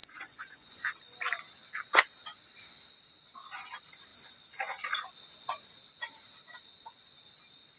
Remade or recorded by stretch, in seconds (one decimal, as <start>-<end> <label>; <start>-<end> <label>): 0.0-0.8 remade; 0.8-7.8 recorded